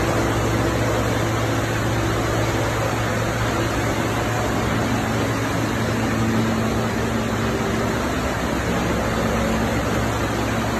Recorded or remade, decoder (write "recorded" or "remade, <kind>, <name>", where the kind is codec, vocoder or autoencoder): recorded